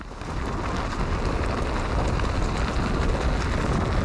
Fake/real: real